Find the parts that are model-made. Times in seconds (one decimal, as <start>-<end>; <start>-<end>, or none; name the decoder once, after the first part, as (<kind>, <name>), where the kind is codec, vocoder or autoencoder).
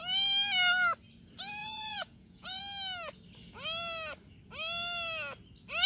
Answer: 1.6-2.6 (vocoder, Vocos)